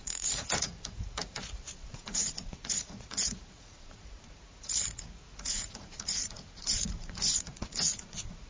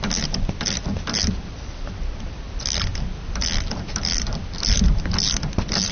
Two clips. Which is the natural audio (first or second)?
second